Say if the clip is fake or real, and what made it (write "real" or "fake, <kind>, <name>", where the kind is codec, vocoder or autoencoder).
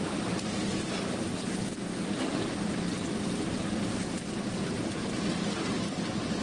real